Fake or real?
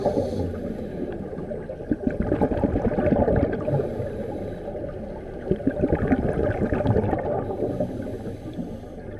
real